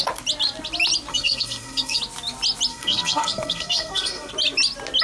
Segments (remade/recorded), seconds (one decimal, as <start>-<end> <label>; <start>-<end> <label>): 0.0-1.1 recorded; 1.1-2.0 remade; 2.0-2.7 recorded; 2.7-4.3 remade; 4.3-5.0 recorded